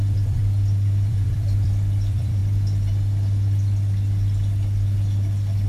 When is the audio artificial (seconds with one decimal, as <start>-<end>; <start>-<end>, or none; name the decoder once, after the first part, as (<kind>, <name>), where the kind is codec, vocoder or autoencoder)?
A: 0.0-0.4 (vocoder, BigVGAN v2); 1.1-2.4